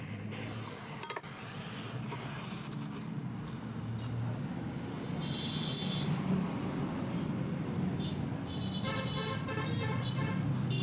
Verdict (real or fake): real